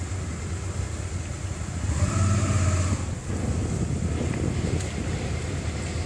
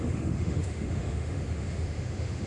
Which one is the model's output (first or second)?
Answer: second